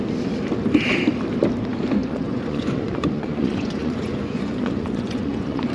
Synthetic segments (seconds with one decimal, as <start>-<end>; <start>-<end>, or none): 2.0-5.7